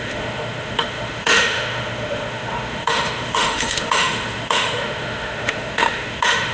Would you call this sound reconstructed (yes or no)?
yes